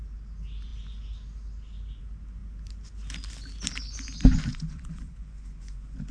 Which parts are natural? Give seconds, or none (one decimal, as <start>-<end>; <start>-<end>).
0.0-4.5